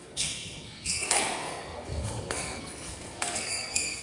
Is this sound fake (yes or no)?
yes